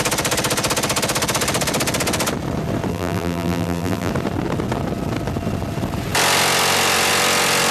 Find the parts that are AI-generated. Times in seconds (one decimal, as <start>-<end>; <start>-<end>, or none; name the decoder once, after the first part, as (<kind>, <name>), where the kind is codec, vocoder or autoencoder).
2.9-4.1 (vocoder, BigVGAN v2)

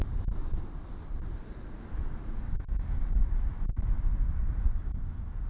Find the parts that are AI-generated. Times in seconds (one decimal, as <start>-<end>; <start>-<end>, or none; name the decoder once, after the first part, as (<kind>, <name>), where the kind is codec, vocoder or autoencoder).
3.2-4.4 (vocoder, BigVGAN v2)